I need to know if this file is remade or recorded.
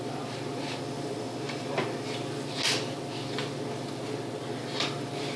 recorded